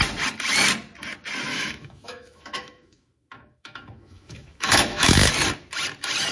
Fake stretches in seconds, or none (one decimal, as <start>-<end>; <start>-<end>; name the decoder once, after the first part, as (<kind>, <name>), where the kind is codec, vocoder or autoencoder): 1.5-5.3 (autoencoder, DAC-VAE)